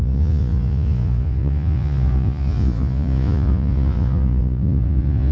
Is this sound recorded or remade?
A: remade